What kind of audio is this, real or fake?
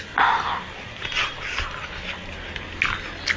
real